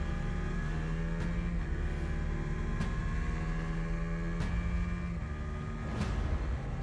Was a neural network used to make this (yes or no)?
no